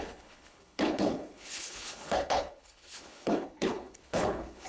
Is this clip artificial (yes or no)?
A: yes